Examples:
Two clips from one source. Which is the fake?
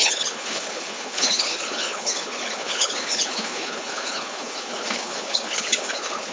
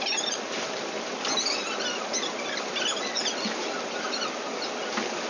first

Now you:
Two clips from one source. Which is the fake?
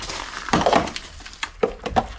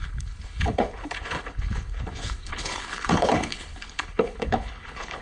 second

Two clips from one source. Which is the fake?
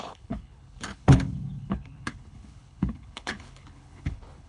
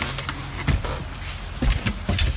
first